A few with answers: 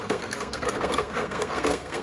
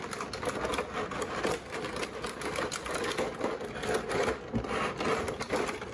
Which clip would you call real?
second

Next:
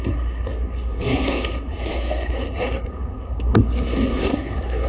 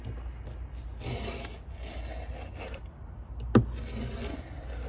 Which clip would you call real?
second